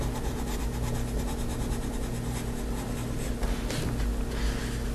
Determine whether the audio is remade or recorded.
recorded